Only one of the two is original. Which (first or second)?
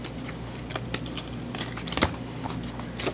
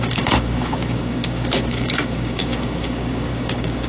first